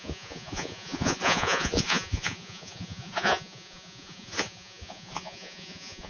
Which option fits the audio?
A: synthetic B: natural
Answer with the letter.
A